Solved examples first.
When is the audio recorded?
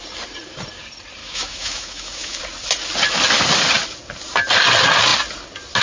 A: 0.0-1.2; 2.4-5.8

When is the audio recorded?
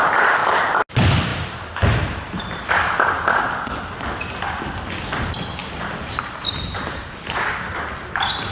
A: 0.0-1.3; 2.7-5.6; 7.4-8.5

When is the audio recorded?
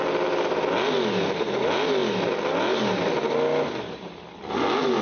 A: 0.0-5.0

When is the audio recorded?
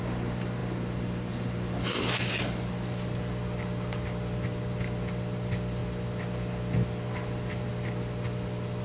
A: 0.0-8.8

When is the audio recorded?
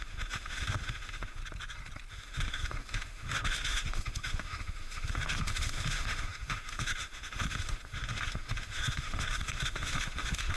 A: 1.4-2.1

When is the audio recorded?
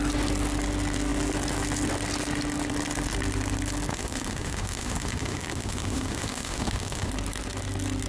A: 0.0-3.9; 7.1-8.1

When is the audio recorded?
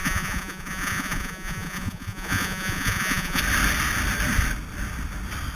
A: 3.4-5.6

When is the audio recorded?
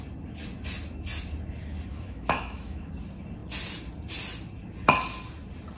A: 0.0-1.9; 2.9-5.8